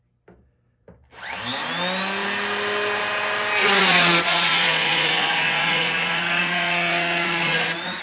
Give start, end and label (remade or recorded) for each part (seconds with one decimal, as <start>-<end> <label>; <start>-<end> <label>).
0.0-3.6 recorded; 3.6-8.0 remade